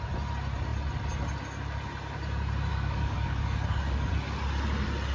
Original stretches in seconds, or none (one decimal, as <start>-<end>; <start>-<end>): 0.0-2.7; 4.1-5.1